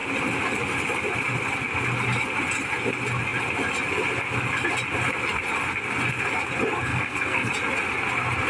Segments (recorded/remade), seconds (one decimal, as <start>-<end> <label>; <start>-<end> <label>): 0.0-6.9 recorded; 6.9-7.5 remade; 7.5-8.5 recorded